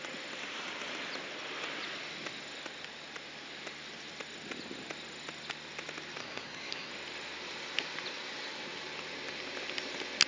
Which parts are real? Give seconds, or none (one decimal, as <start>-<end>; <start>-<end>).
0.0-6.2; 6.9-10.3